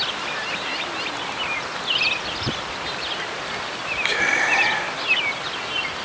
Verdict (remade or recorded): recorded